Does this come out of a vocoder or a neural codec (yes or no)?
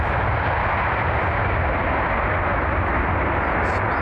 no